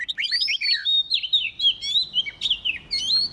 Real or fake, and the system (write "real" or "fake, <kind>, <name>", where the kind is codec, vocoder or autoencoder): real